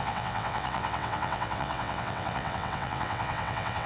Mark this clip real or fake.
fake